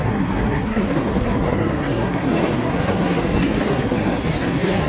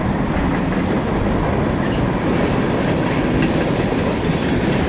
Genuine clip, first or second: second